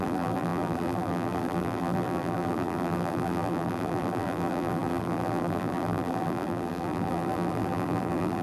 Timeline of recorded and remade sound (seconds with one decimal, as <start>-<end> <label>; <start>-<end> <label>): 0.0-8.4 remade